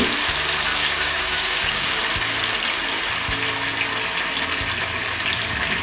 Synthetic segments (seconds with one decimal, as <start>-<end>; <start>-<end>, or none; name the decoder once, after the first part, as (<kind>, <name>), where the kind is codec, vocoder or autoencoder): 0.7-2.0 (codec, DAC)